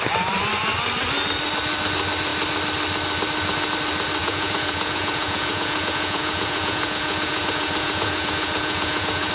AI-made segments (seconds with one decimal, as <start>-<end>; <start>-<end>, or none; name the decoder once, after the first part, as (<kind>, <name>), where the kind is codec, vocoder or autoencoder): 4.2-9.3 (vocoder, Vocos)